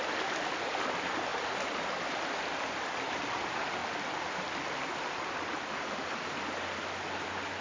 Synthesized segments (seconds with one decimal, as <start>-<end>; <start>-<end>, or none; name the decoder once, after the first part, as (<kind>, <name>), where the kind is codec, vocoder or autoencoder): none